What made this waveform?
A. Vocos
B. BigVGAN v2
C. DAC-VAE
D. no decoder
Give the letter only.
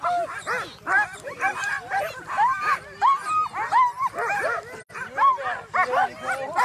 D